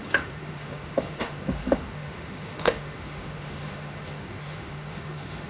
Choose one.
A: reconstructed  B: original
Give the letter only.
A